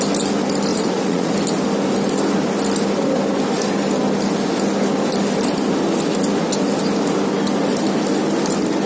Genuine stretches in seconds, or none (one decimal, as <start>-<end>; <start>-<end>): 0.0-0.7; 1.3-8.9